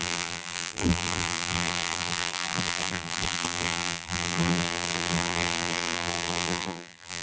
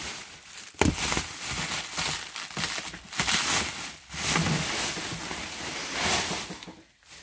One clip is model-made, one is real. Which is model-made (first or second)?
first